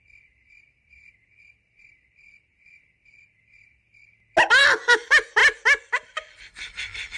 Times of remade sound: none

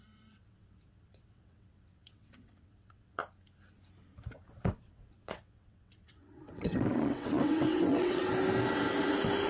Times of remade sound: 0.0-3.2 (vocoder, WaveNeXt); 4.7-8.2

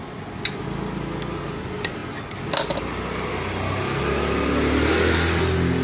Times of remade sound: none

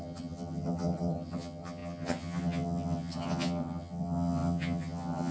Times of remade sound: 0.0-5.3 (vocoder, HiFi-GAN)